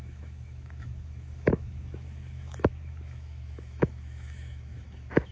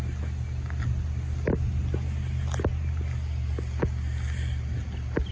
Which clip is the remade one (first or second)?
first